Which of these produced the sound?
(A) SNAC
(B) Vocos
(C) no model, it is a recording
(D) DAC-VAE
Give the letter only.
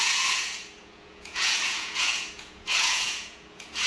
B